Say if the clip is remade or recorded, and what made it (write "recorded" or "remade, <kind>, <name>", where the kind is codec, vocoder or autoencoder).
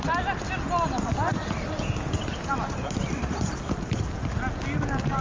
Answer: recorded